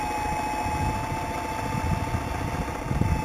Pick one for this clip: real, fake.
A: real